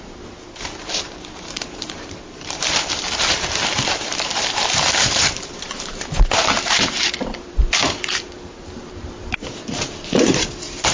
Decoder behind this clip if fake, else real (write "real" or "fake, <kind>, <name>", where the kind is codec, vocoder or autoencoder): fake, vocoder, BigVGAN v2